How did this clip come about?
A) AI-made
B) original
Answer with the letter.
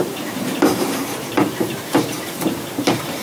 A